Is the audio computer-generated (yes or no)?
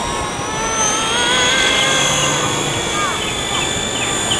no